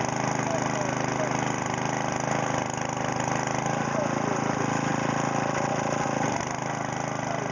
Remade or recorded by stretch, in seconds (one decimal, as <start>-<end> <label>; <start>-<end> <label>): 0.0-7.5 recorded

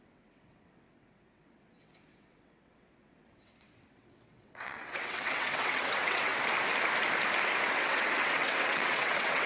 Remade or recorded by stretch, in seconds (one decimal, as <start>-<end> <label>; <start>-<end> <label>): 0.0-6.3 remade; 6.3-7.7 recorded; 7.7-9.5 remade

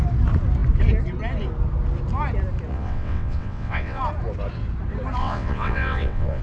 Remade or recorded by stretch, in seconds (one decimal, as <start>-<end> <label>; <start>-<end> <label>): 0.0-2.7 recorded; 2.7-4.0 remade; 4.0-5.2 recorded; 5.2-6.4 remade